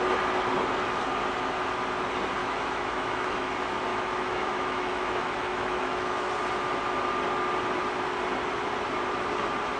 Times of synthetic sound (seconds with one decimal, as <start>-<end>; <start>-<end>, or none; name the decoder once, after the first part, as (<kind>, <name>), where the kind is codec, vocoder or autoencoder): 2.4-3.5 (autoencoder, DAC-VAE); 3.9-6.3